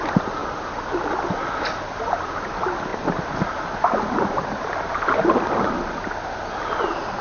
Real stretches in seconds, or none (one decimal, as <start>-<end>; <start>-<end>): 0.0-7.2